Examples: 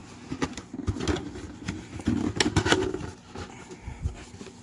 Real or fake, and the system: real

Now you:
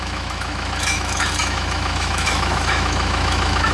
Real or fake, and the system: fake, autoencoder, DAC-VAE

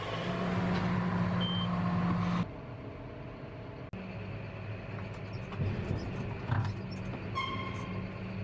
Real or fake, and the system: real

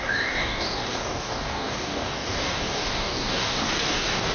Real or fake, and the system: fake, codec, DAC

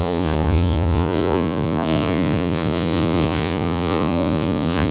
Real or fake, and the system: fake, vocoder, Vocos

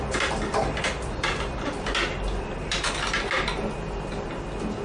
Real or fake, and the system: real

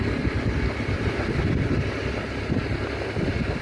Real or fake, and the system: real